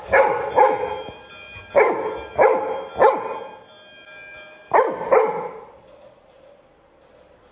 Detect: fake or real real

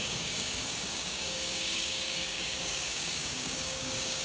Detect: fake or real fake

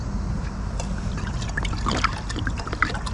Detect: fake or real real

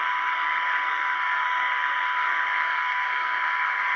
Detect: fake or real fake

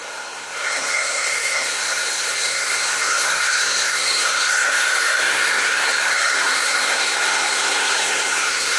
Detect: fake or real fake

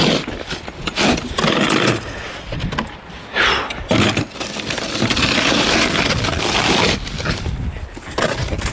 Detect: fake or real real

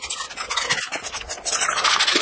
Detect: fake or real real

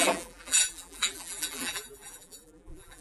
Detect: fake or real fake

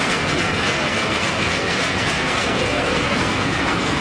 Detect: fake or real fake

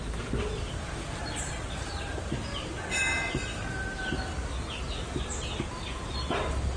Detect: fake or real real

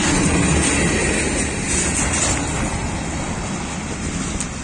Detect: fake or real real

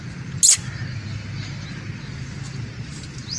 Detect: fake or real real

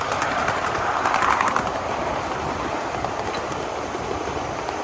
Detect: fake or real real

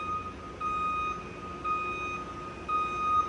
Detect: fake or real real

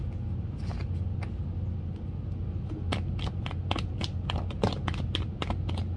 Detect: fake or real real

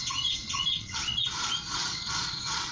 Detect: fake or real fake